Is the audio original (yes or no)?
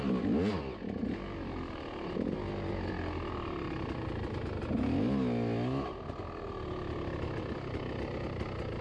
yes